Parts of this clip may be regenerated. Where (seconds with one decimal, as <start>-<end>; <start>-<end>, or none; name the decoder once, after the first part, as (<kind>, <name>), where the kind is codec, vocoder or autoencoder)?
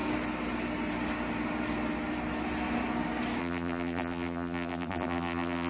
3.4-5.7 (vocoder, BigVGAN v2)